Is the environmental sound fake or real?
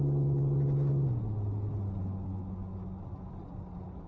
real